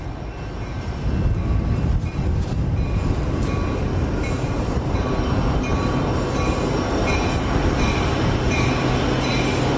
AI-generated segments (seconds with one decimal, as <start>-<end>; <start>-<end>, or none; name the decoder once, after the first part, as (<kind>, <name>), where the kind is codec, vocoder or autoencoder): 3.9-5.3 (vocoder, BigVGAN v2)